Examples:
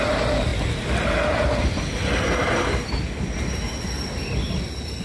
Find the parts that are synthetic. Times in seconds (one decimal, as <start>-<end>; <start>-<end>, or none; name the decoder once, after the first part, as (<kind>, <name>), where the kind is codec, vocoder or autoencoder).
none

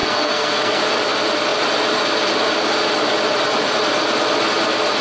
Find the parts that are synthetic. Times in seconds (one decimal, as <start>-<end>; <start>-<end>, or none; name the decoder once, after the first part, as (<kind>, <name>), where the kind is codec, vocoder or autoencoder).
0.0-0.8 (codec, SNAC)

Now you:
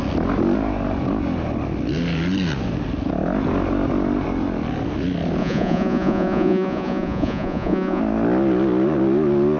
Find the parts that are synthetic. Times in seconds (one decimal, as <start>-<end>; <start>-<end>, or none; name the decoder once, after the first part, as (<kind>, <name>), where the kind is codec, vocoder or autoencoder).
5.4-8.0 (vocoder, Vocos)

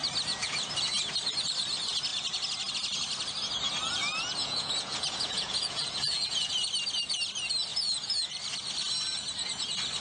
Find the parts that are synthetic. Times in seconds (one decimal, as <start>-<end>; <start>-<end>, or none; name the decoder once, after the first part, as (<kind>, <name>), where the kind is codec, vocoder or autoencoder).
4.4-6.5 (vocoder, Vocos); 7.7-8.3

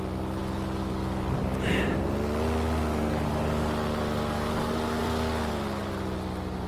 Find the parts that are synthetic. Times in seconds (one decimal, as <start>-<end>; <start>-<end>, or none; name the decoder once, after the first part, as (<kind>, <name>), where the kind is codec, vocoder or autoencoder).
none

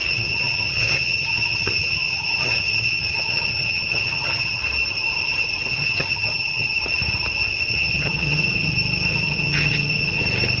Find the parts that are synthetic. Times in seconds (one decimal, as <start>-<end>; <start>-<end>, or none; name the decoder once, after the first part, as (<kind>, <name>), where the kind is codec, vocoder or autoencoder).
0.0-4.6 (vocoder, HiFi-GAN); 5.7-6.8; 7.7-8.7; 9.1-10.2

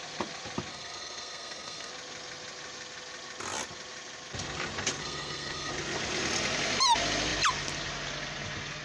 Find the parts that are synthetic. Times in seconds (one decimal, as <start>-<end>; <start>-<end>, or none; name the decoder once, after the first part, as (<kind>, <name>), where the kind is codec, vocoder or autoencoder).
0.7-1.9 (codec, SNAC); 5.0-5.7

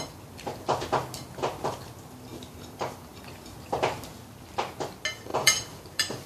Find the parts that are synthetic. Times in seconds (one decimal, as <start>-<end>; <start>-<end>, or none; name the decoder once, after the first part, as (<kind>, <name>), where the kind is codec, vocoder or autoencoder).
2.3-3.2 (vocoder, BigVGAN v2); 5.3-6.3